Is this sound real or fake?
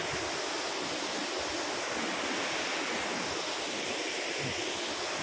real